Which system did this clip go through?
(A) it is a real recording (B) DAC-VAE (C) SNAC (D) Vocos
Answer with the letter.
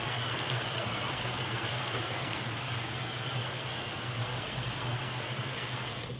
C